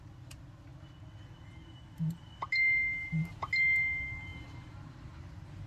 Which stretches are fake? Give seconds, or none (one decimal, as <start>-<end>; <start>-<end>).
4.3-5.2